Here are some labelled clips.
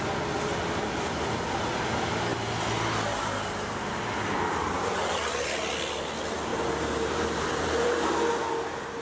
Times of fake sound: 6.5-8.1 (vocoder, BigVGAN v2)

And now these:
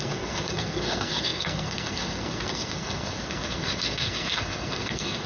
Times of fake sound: 0.0-5.3 (codec, SNAC)

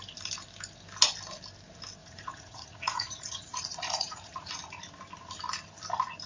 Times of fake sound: 2.0-4.6 (vocoder, Vocos)